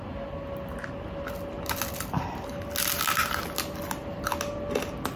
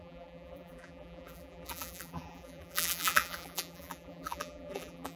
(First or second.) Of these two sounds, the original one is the first